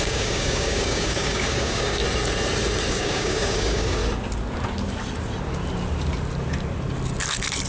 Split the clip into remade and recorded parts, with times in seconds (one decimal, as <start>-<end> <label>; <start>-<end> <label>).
0.0-2.0 remade; 2.0-2.9 recorded; 2.9-4.0 remade; 4.0-7.7 recorded